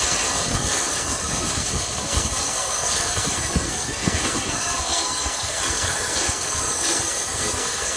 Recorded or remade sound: remade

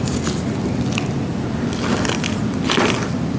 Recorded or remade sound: recorded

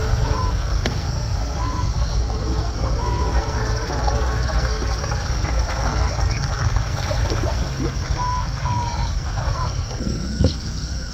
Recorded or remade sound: remade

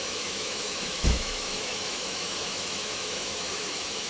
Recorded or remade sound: remade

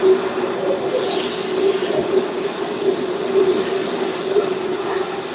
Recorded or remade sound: recorded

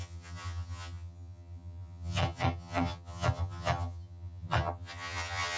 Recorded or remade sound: remade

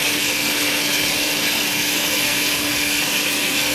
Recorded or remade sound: remade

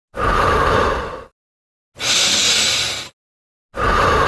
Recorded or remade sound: recorded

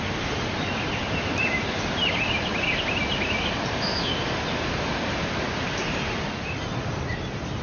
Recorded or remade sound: recorded